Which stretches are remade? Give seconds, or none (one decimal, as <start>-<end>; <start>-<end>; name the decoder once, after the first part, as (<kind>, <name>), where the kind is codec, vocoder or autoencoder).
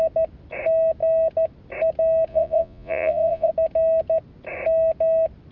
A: 2.3-3.5 (vocoder, Vocos)